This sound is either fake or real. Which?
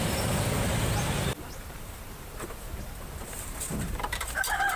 fake